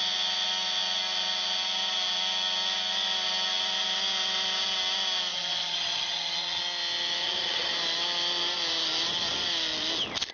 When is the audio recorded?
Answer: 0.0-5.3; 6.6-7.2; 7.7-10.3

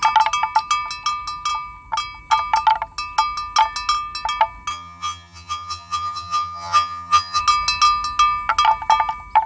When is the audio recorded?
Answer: 0.0-4.7; 7.4-9.5

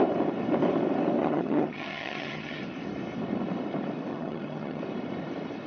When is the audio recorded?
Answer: 0.0-1.2; 2.6-4.1; 4.8-5.7

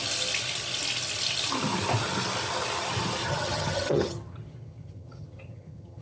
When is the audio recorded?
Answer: 0.0-3.2

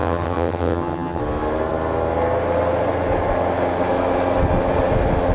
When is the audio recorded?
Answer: 1.2-5.3